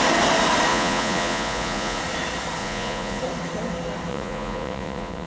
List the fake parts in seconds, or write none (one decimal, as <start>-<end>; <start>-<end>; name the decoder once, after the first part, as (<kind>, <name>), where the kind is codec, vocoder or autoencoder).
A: 0.7-2.0 (vocoder, Vocos); 2.6-3.2; 4.1-5.3